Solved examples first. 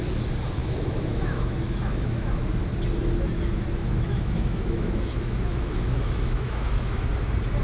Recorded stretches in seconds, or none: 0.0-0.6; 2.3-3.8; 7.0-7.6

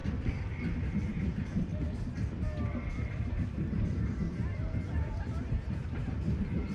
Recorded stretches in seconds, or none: 0.0-0.9; 1.7-5.1

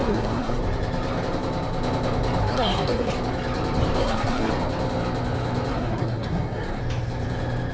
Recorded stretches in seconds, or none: 0.6-2.4; 3.1-4.0; 4.5-5.7; 6.8-7.7

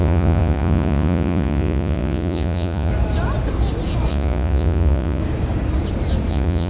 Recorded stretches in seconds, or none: 2.9-4.1; 5.2-6.3

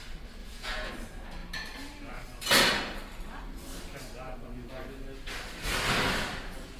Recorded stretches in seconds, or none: 0.0-0.4; 0.9-6.8

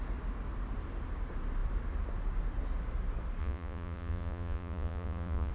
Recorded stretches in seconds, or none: 0.0-3.4

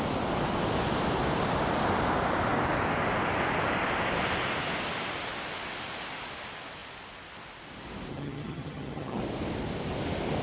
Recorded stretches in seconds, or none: 0.0-8.1; 9.2-10.4

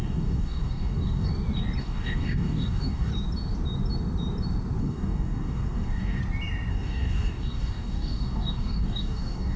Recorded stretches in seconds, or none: 1.3-1.8; 3.1-4.8; 6.2-6.7